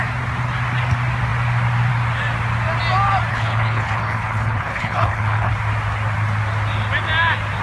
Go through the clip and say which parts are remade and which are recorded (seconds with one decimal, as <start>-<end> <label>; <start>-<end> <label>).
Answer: 0.0-3.3 recorded; 3.3-5.5 remade; 5.5-7.6 recorded